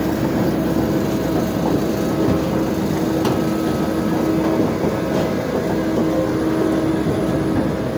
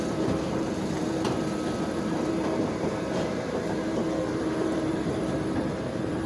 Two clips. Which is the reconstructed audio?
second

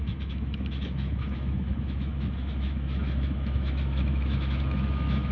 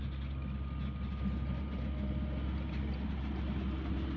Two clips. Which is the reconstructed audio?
first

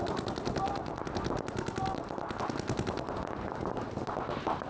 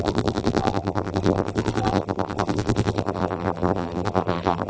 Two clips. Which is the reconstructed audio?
second